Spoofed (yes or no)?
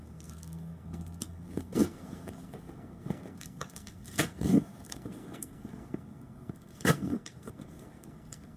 yes